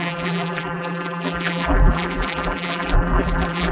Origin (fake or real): fake